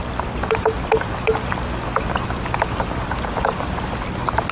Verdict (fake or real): real